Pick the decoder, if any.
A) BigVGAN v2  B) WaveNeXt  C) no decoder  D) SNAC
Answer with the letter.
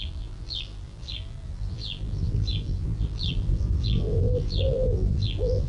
A